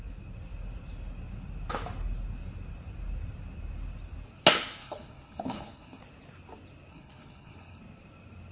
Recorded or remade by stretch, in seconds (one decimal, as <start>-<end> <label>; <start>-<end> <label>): 0.0-4.8 recorded; 4.8-6.0 remade; 6.0-6.9 recorded; 6.9-7.8 remade; 7.8-8.5 recorded

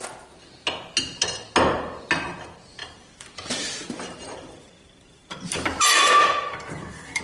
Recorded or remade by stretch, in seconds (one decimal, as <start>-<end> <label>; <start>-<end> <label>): 0.0-2.8 recorded; 2.8-7.2 remade

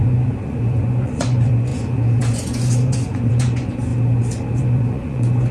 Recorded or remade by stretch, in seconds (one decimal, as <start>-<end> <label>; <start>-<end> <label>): 0.0-3.9 remade; 3.9-4.6 recorded; 4.6-5.5 remade

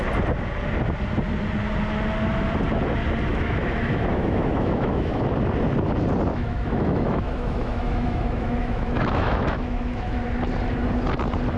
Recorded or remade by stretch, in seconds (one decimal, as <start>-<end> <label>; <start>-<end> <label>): 0.0-3.3 recorded; 3.3-5.2 remade; 5.2-6.3 recorded; 6.3-10.2 remade; 10.2-11.6 recorded

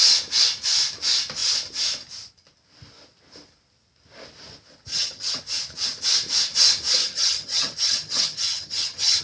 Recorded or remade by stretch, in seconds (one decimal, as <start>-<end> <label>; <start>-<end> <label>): 0.0-4.9 recorded; 4.9-5.4 remade; 5.4-7.0 recorded; 7.0-9.2 remade

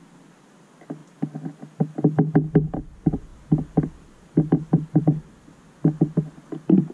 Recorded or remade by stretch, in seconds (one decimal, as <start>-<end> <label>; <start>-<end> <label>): 0.0-6.9 recorded

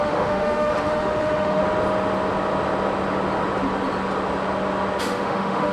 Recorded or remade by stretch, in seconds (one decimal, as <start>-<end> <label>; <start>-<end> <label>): 0.0-1.6 remade; 1.6-5.0 recorded; 5.0-5.7 remade